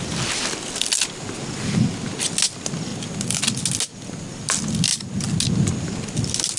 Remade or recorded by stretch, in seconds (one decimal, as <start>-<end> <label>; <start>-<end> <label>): 0.0-6.6 recorded